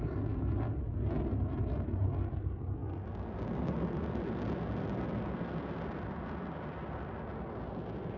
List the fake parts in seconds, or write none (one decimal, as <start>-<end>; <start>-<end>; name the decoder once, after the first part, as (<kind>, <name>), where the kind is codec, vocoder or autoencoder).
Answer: none